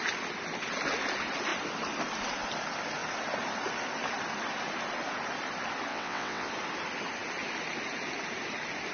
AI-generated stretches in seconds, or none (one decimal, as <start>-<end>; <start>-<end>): 5.9-6.5